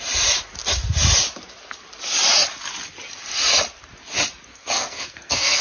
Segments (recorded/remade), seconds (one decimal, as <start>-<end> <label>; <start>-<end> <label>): 0.0-4.5 recorded; 4.5-5.6 remade